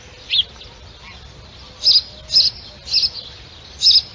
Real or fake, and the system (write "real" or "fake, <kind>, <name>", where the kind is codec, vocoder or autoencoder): real